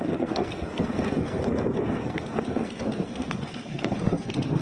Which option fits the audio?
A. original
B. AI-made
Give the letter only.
B